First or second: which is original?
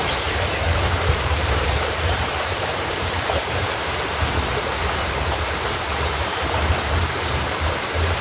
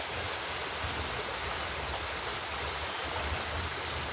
second